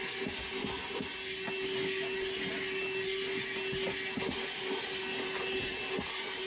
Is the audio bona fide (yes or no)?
yes